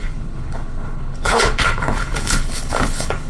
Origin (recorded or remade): remade